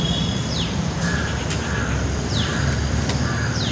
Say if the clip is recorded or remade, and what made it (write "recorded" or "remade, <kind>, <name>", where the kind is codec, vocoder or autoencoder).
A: remade, vocoder, BigVGAN v2